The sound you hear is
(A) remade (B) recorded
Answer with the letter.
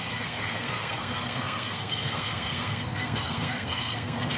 A